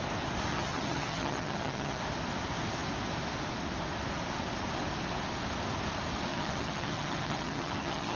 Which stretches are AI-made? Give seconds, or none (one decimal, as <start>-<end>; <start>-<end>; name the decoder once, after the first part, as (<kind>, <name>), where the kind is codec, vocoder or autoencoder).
0.5-2.0 (vocoder, HiFi-GAN); 6.3-8.2